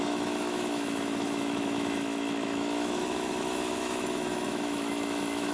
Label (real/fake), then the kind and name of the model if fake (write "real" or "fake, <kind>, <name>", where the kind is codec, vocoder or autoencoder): fake, autoencoder, DAC-VAE